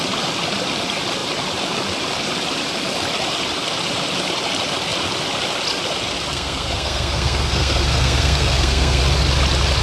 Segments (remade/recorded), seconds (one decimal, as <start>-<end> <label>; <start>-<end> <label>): 0.0-6.3 recorded; 6.3-9.0 remade; 9.0-9.8 recorded